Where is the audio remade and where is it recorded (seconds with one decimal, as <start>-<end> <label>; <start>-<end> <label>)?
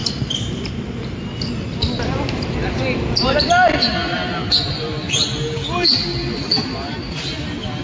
0.0-7.8 recorded